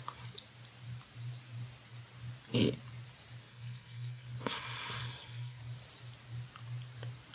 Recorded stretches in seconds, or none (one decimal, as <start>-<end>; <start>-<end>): 0.0-3.5; 4.3-5.0; 5.6-7.3